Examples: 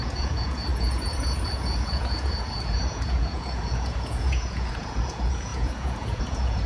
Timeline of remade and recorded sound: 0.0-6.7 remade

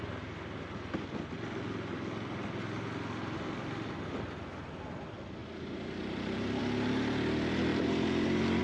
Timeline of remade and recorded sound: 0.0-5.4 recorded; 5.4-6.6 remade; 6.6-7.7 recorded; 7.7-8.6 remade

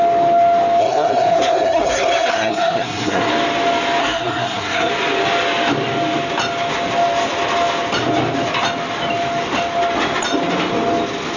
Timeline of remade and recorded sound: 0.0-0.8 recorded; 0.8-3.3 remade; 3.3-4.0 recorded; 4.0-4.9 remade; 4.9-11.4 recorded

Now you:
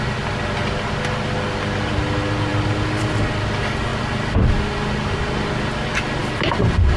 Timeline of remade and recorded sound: 0.0-7.0 recorded

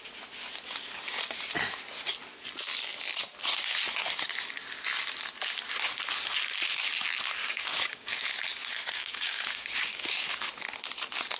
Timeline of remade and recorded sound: 0.0-7.4 recorded; 7.4-10.5 remade; 10.5-11.4 recorded